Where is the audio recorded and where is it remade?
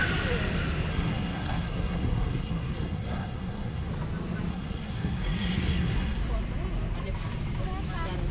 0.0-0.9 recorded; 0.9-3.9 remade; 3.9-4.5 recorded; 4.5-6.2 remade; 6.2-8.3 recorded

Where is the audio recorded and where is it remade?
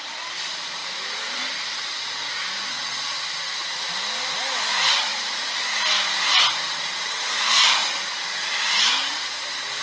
0.0-5.1 remade; 5.1-6.2 recorded; 6.2-7.8 remade; 7.8-8.9 recorded; 8.9-9.8 remade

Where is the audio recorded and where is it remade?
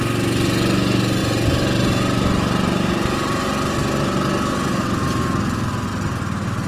0.0-6.7 recorded